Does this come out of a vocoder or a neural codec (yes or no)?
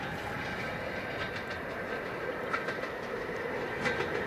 no